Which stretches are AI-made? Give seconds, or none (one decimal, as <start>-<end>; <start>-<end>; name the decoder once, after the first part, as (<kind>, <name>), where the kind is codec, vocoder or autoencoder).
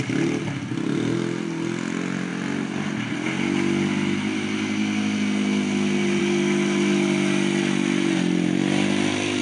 none